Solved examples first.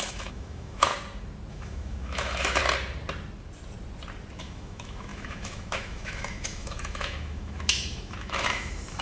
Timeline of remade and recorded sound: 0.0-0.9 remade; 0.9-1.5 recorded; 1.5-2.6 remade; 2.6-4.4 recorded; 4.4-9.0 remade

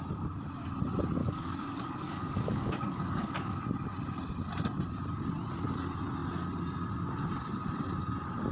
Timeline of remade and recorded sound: 0.0-1.2 recorded; 1.2-3.6 remade; 3.6-8.5 recorded